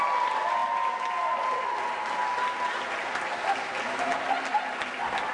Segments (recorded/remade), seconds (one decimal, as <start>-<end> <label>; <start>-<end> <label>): 0.0-5.3 recorded